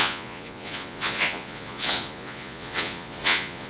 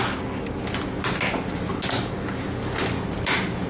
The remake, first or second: first